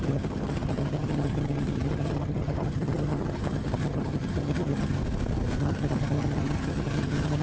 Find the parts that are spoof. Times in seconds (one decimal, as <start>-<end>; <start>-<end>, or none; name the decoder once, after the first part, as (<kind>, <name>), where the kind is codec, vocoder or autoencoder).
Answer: 0.0-5.0 (vocoder, HiFi-GAN); 5.6-7.4